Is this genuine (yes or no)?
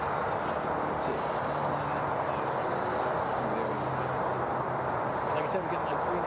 yes